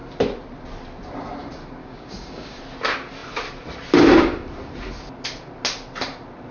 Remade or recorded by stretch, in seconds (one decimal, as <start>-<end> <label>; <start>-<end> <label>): 0.0-1.8 recorded; 1.8-2.6 remade; 2.6-6.5 recorded